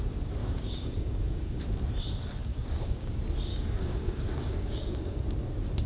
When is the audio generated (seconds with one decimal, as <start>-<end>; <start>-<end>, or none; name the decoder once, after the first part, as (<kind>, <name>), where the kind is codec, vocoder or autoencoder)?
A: 0.4-1.6 (codec, DAC); 2.5-3.1; 3.5-5.2